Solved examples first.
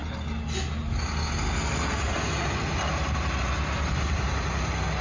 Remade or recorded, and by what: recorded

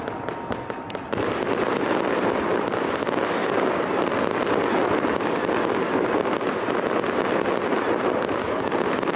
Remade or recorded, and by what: recorded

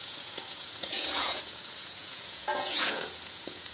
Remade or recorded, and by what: remade, vocoder, Vocos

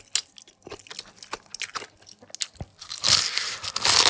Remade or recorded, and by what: recorded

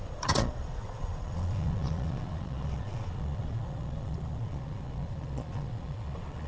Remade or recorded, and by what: remade, vocoder, Vocos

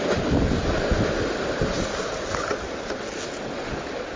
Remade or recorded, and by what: recorded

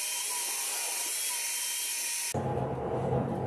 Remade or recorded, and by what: recorded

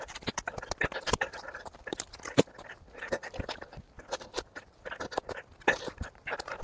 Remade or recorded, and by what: recorded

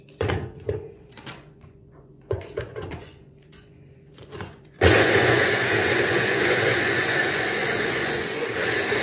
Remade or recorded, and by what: remade, vocoder, Vocos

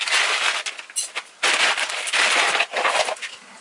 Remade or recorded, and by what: recorded